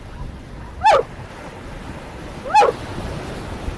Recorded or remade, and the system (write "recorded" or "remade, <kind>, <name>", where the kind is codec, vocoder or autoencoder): recorded